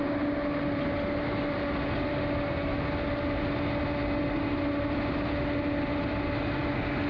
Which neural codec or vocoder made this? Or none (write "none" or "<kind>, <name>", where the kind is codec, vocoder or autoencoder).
none